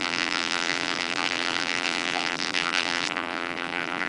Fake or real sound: fake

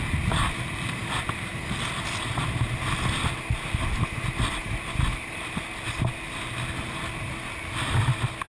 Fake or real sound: real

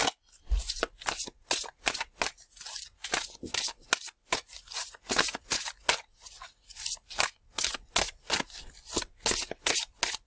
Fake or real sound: real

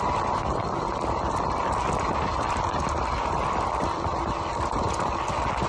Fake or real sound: fake